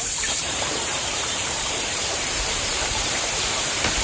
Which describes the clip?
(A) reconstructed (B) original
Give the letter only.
A